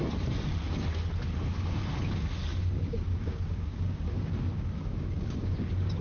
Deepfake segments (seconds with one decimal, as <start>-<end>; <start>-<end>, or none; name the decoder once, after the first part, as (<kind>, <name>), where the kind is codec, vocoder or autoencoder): 2.5-6.0 (codec, DAC)

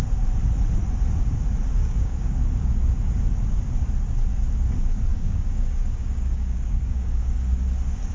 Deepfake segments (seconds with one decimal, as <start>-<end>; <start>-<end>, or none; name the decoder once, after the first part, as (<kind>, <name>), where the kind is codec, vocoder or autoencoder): 1.8-2.4 (codec, DAC); 5.1-7.5

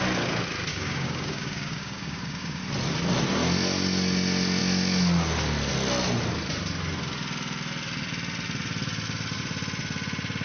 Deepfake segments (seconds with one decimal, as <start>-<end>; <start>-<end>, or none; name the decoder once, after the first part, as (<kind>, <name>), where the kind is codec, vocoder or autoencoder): 0.7-2.6 (codec, DAC)

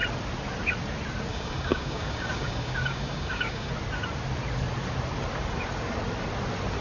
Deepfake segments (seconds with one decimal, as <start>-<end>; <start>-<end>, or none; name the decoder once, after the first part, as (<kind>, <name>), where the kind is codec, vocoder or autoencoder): 1.3-3.7 (codec, DAC)

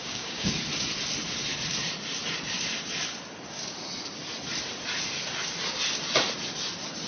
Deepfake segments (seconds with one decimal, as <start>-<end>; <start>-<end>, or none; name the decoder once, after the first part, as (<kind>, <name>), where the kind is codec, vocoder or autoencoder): 0.0-0.5 (codec, DAC)